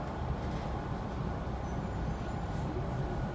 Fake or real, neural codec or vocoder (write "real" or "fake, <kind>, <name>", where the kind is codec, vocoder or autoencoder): real